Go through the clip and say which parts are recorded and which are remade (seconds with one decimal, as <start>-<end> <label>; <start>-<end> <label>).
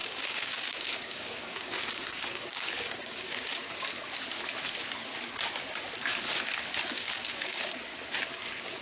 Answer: 0.0-3.5 remade; 3.5-6.9 recorded; 6.9-7.9 remade; 7.9-8.8 recorded